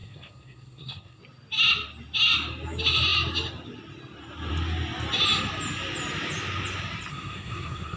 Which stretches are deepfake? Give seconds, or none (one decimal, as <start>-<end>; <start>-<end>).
0.0-1.2; 7.1-8.0